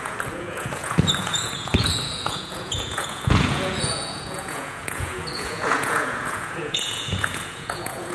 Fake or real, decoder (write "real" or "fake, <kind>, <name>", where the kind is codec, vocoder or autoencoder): fake, vocoder, Vocos